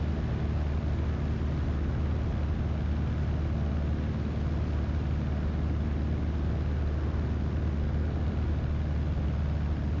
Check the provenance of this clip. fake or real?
real